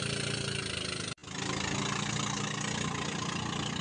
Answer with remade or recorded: recorded